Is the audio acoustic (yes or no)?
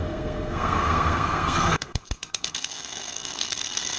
no